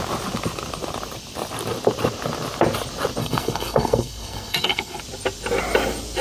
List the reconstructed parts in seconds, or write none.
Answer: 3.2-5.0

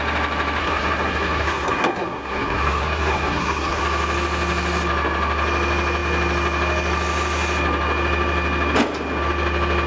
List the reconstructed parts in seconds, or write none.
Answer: 0.6-3.8